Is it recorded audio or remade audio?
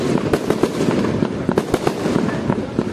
recorded